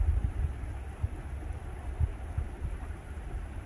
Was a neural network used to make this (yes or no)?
no